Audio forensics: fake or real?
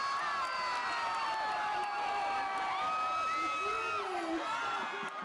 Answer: real